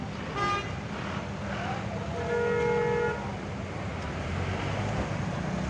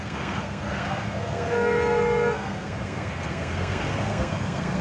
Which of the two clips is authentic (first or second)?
first